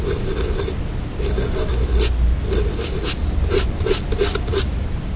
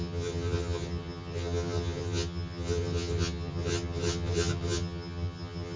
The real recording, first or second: first